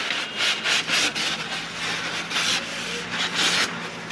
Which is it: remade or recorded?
recorded